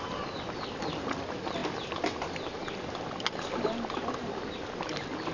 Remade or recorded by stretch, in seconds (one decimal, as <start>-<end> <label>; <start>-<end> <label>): 0.0-5.3 recorded